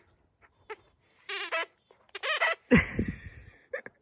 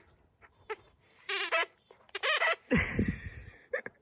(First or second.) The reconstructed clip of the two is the second